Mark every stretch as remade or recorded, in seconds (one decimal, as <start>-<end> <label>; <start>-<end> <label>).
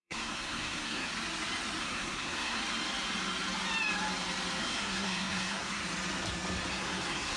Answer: 0.0-1.1 remade; 1.1-1.8 recorded; 1.8-2.6 remade; 2.6-4.6 recorded; 4.6-5.8 remade; 5.8-6.7 recorded; 6.7-7.4 remade